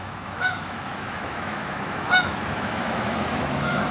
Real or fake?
fake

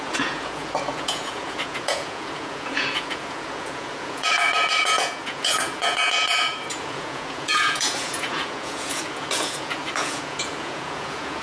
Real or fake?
fake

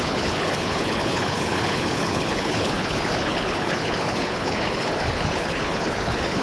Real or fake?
fake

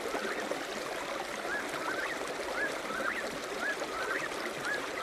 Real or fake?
real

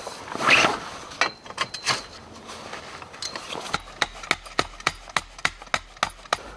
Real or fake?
real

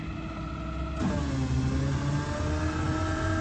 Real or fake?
real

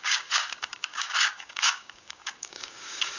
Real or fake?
fake